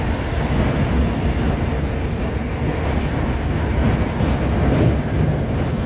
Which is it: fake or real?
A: real